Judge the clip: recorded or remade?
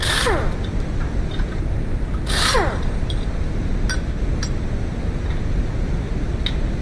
recorded